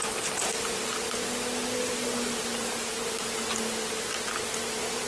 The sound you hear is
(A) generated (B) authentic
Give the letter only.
B